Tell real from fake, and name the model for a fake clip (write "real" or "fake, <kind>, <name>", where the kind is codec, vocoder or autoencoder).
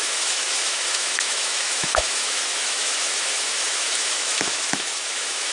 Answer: fake, autoencoder, DAC-VAE